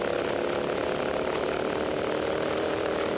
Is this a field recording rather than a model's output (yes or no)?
yes